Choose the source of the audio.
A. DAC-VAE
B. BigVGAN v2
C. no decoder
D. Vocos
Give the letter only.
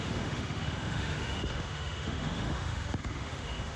A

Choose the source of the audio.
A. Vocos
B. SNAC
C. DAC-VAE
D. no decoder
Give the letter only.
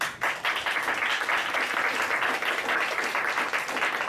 D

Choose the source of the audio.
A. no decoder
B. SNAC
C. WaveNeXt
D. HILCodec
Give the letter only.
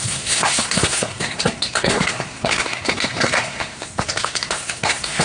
B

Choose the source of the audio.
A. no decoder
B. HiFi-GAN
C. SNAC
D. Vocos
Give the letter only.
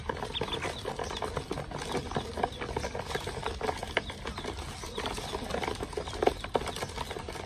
A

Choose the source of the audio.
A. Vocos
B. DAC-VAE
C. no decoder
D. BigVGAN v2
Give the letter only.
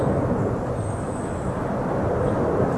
C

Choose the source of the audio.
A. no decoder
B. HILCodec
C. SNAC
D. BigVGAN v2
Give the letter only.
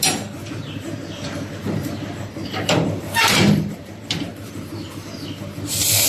D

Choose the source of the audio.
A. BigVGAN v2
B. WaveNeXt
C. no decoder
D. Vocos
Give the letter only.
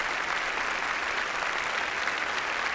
C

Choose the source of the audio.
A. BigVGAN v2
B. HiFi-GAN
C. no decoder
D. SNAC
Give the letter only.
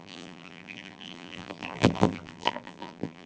A